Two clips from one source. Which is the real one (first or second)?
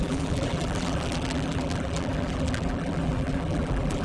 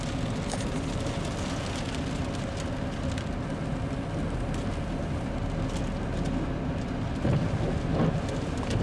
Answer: second